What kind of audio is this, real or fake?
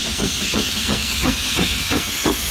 fake